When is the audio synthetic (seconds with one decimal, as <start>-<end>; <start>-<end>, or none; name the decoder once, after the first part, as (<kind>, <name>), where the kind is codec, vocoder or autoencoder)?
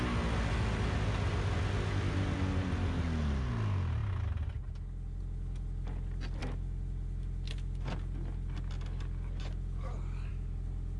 none